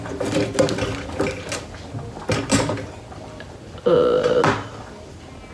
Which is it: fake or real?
real